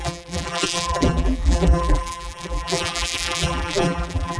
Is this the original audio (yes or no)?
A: no